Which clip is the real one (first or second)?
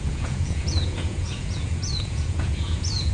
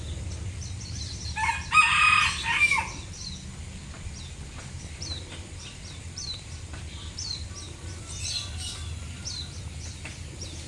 second